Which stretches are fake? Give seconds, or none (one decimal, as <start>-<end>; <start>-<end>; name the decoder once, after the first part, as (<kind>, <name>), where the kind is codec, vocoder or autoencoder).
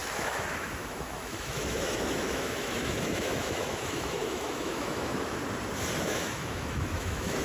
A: 0.0-5.4 (autoencoder, DAC-VAE); 6.0-7.4